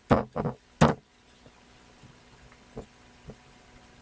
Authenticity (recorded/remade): recorded